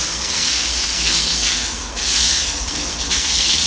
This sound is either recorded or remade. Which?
remade